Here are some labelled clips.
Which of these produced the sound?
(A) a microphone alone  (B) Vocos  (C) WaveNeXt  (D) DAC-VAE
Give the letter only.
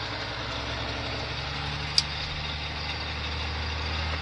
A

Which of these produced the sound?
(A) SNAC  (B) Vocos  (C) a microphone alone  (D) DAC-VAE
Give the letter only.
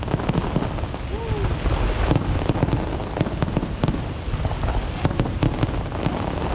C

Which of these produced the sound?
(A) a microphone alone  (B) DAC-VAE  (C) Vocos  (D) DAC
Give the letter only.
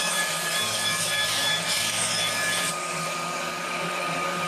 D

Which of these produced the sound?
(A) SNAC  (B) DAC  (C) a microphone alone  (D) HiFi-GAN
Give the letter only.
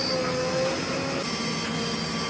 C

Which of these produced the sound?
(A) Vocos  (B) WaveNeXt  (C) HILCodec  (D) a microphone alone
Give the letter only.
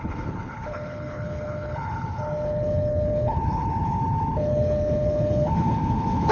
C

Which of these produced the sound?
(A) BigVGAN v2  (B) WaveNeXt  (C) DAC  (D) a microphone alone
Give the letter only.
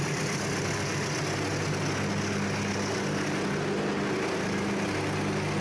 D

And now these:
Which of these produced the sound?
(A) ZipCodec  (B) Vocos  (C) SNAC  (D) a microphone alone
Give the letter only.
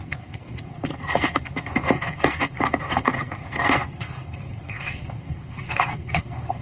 C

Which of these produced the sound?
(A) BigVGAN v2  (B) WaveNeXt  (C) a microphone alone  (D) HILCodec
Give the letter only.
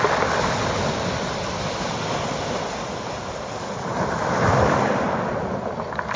C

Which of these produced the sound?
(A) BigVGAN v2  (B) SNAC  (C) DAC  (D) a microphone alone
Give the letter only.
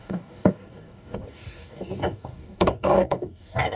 C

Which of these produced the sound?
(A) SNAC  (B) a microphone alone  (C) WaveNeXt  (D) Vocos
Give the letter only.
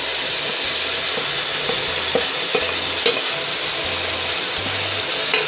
B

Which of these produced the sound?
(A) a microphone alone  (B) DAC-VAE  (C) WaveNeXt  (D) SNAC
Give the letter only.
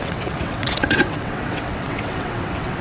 C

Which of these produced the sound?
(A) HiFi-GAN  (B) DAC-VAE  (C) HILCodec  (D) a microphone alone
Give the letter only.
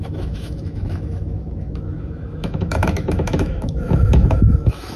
B